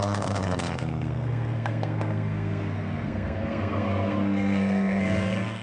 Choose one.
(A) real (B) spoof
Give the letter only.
B